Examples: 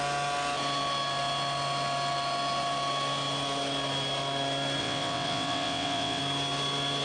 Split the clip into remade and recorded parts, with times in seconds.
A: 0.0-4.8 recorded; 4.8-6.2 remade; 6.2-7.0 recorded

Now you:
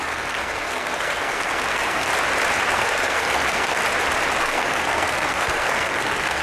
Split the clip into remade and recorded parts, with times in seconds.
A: 0.0-2.1 remade; 2.1-2.7 recorded; 2.7-3.8 remade; 3.8-4.4 recorded; 4.4-6.4 remade

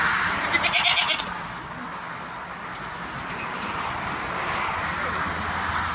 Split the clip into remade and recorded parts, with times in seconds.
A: 0.0-5.9 recorded

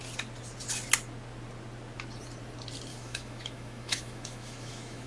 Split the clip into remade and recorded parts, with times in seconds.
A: 0.0-2.9 recorded; 2.9-5.1 remade

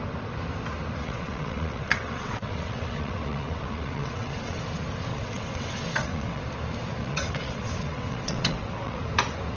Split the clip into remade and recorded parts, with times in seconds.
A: 0.0-1.0 recorded; 1.0-4.6 remade; 4.6-5.1 recorded; 5.1-6.4 remade; 6.4-7.0 recorded; 7.0-9.0 remade; 9.0-9.6 recorded

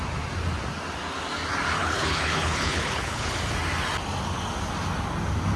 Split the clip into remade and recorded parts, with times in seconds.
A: 0.0-1.8 recorded; 1.8-3.3 remade; 3.3-5.6 recorded

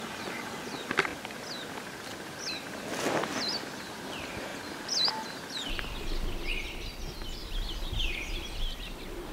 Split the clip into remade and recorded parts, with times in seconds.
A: 0.0-7.4 recorded; 7.4-8.2 remade; 8.2-9.3 recorded

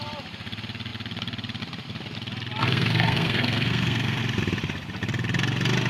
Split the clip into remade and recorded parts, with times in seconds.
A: 0.0-2.6 recorded; 2.6-4.2 remade; 4.2-5.9 recorded